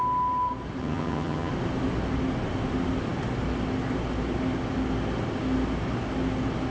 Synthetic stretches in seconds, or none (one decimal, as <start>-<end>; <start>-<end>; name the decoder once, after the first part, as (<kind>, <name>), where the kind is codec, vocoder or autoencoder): 0.8-1.5 (vocoder, HiFi-GAN)